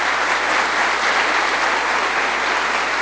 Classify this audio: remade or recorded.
recorded